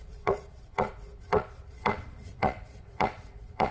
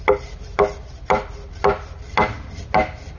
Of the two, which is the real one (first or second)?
second